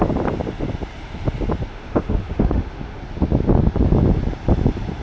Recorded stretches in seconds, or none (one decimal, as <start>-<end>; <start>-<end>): 0.0-1.7; 3.0-5.0